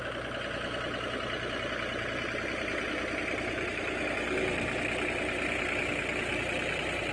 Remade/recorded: recorded